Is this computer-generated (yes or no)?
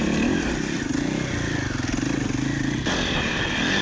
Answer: no